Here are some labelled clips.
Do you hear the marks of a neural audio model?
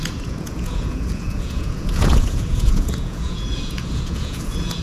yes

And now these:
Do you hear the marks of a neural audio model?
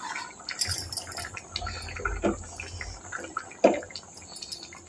no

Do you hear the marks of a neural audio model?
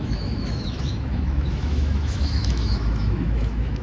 yes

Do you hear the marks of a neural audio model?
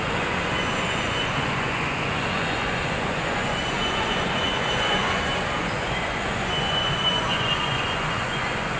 yes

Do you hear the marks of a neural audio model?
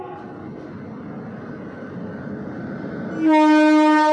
no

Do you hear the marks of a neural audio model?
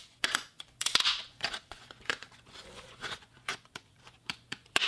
yes